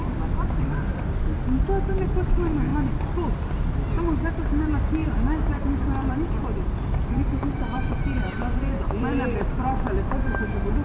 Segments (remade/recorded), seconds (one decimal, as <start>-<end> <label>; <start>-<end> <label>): 0.0-5.0 recorded; 5.0-9.8 remade; 9.8-10.8 recorded